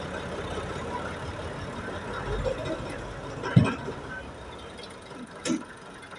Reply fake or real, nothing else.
real